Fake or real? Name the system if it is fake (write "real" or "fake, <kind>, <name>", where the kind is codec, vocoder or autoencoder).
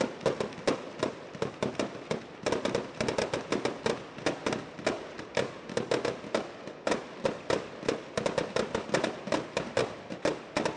real